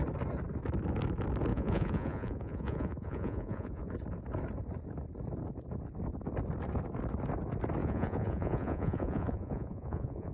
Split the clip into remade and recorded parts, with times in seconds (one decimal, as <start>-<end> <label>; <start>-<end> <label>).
0.0-1.5 recorded; 1.5-3.8 remade; 3.8-7.8 recorded; 7.8-10.3 remade